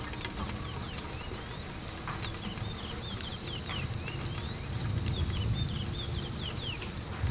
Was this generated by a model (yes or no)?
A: no